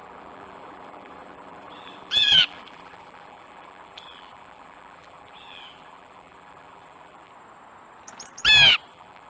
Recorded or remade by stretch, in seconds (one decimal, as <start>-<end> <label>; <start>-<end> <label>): 0.0-7.3 remade; 7.3-8.9 recorded; 8.9-9.3 remade